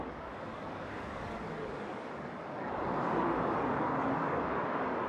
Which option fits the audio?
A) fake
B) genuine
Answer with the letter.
A